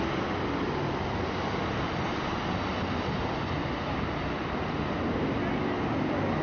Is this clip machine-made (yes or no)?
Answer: no